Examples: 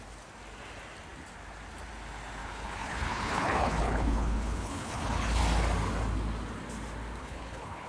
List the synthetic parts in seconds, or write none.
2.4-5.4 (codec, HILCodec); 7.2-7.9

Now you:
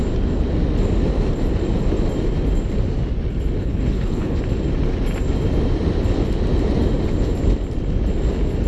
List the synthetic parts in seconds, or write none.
3.6-4.4 (codec, HILCodec)

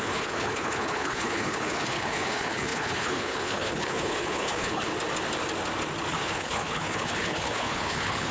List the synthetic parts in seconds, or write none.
0.0-4.9 (codec, HILCodec); 6.1-8.3

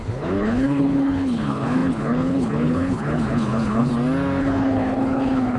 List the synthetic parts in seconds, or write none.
0.0-3.9 (codec, HILCodec); 4.4-5.6